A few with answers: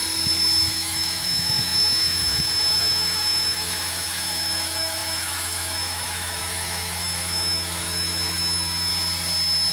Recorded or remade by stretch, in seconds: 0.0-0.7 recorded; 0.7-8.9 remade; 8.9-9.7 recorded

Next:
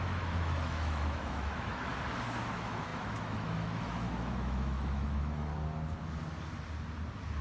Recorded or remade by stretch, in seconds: 0.0-1.9 remade; 1.9-2.5 recorded; 2.5-5.5 remade; 5.5-7.4 recorded